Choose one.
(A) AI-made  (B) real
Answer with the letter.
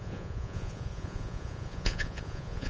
A